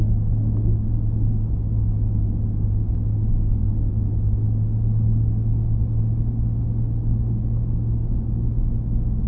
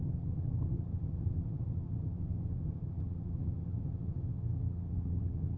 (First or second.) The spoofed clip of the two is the second